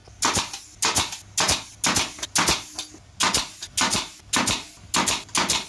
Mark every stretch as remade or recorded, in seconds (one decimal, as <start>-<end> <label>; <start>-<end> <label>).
0.0-5.7 recorded